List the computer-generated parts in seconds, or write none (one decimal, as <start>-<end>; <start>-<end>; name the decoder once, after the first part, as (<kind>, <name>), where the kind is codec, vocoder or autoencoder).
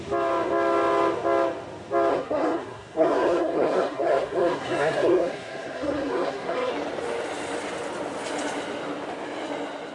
2.1-6.7 (codec, SNAC)